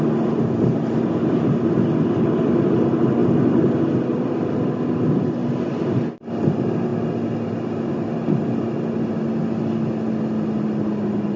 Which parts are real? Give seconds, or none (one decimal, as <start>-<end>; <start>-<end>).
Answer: 0.0-11.4